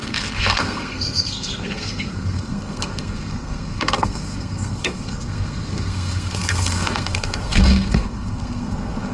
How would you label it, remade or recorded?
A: remade